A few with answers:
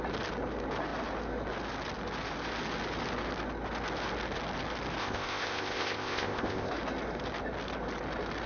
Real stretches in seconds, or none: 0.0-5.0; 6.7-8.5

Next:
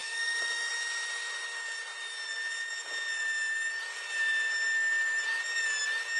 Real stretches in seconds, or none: 0.7-6.2

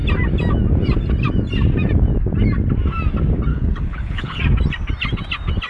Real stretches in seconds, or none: 0.0-3.5; 4.4-5.7

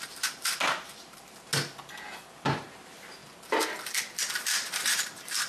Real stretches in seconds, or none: 1.5-2.3; 3.2-4.3

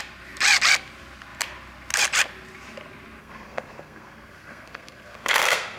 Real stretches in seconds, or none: 0.0-3.2

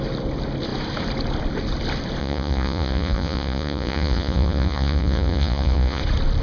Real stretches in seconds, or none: 0.0-2.2; 6.0-6.4

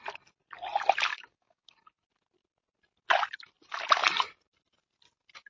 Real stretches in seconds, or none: 0.0-1.1; 1.8-5.5